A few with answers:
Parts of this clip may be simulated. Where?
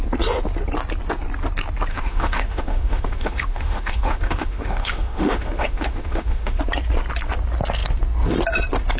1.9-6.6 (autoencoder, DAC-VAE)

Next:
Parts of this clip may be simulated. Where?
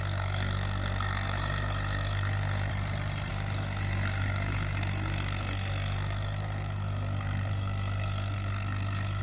0.0-2.7 (codec, SNAC); 3.3-9.2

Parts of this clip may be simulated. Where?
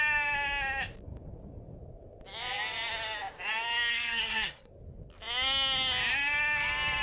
3.9-4.7 (codec, SNAC)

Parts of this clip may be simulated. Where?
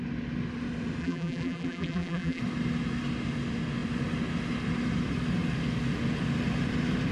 1.0-2.4 (vocoder, BigVGAN v2)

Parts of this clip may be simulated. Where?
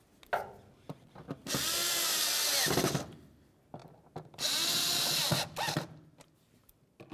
none